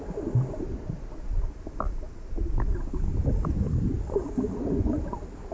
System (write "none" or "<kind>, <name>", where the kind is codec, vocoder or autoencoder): none